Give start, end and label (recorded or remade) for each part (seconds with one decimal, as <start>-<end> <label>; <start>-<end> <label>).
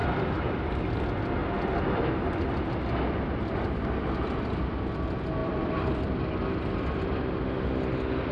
0.0-0.7 remade; 0.7-5.4 recorded; 5.4-6.2 remade; 6.2-8.3 recorded